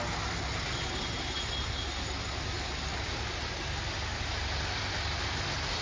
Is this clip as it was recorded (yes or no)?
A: yes